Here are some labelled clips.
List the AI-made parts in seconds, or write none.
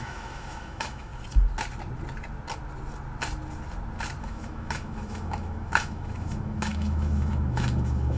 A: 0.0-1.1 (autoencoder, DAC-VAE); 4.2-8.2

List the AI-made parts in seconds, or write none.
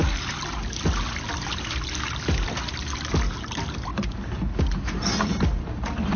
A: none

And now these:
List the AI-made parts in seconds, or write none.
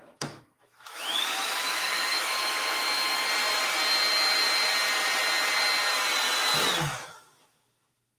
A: 0.0-2.8 (autoencoder, DAC-VAE); 6.8-8.2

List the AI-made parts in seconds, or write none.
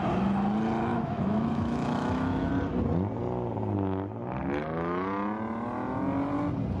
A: 0.9-2.5 (autoencoder, DAC-VAE)